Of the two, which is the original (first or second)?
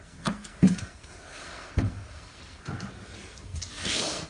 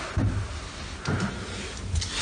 second